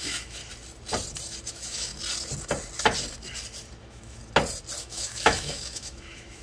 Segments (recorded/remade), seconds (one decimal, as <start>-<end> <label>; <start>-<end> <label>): 0.0-0.4 remade; 0.4-1.5 recorded; 1.5-1.9 remade; 1.9-3.8 recorded; 3.8-4.2 remade; 4.2-4.8 recorded; 4.8-6.4 remade